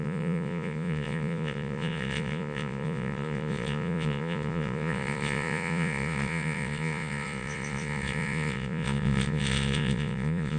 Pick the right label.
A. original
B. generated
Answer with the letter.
B